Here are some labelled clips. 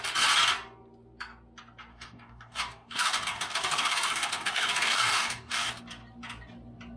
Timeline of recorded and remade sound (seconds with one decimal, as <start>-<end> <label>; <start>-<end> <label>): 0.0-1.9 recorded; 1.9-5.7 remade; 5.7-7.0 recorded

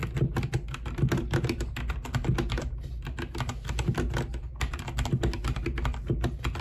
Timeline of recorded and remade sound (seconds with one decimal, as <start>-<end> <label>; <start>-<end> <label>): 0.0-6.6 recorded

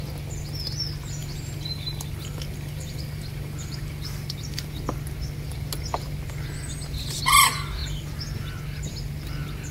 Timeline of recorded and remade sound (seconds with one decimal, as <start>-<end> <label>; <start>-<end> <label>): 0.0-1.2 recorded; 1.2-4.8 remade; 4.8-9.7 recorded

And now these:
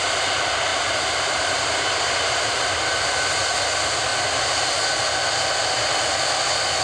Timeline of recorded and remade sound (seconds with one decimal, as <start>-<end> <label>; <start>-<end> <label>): 0.0-0.7 recorded; 0.7-3.3 remade; 3.3-6.8 recorded